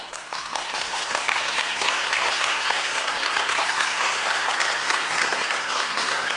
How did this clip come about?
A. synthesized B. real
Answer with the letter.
A